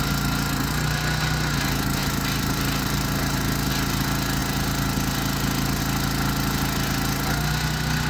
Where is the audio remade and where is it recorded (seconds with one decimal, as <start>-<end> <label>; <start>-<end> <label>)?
0.0-2.0 recorded; 2.0-3.7 remade; 3.7-8.1 recorded